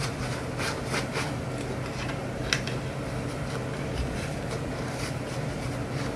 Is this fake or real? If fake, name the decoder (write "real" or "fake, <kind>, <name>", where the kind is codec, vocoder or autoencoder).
real